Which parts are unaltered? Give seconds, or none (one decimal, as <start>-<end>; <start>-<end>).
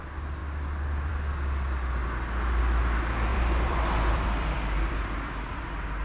0.0-0.4; 1.1-3.3; 5.6-6.0